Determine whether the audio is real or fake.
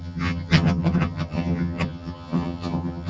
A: fake